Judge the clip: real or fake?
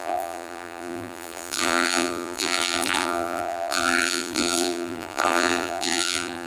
fake